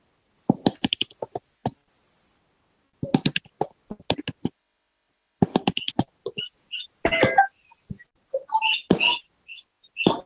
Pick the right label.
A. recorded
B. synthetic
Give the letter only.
A